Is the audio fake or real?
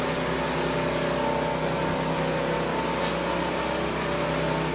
real